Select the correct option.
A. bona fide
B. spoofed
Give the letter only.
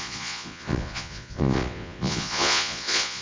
B